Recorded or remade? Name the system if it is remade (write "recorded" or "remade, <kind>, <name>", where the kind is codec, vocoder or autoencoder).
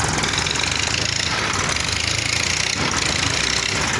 recorded